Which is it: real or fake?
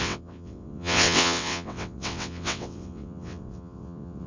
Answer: fake